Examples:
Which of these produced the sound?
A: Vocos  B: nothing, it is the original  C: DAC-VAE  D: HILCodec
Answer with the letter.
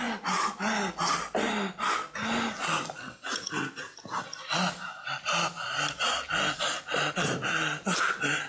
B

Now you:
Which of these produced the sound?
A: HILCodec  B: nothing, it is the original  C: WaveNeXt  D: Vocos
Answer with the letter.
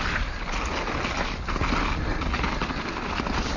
B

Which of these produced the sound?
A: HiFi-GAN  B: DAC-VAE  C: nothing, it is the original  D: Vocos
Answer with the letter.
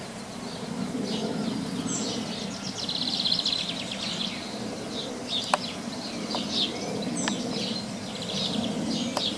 C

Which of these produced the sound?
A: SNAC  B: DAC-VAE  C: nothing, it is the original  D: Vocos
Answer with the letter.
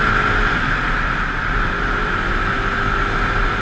C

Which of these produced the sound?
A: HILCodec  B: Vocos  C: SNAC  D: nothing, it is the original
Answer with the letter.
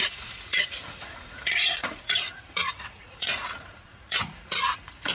B